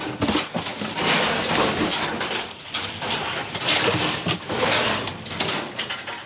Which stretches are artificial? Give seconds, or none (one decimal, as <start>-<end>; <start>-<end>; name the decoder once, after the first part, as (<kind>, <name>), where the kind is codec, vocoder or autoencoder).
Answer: 1.9-5.7 (vocoder, BigVGAN v2)